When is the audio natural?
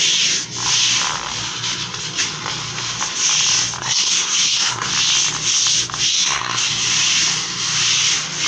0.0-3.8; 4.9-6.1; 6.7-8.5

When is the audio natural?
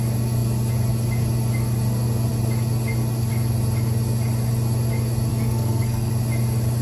0.0-5.3; 6.1-6.8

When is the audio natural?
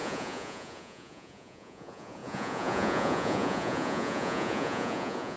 none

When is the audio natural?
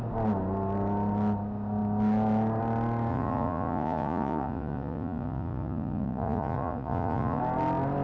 0.0-3.1; 7.4-8.0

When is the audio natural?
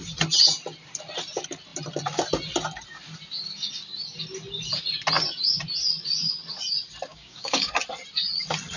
0.0-7.1; 7.7-8.8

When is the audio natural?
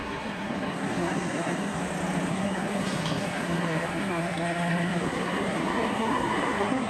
1.8-2.3